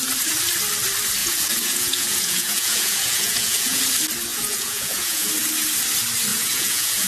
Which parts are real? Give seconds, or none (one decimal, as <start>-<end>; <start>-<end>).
0.0-1.2; 3.8-4.3; 5.3-6.3